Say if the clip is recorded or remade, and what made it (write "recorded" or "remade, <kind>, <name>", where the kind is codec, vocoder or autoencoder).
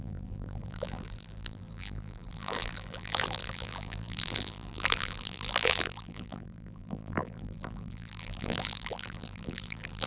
remade, vocoder, BigVGAN v2